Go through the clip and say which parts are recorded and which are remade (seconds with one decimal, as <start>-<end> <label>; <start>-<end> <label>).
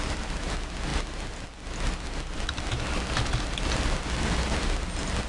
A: 0.0-5.3 recorded